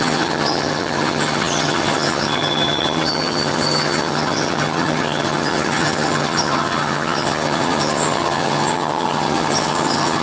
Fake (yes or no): yes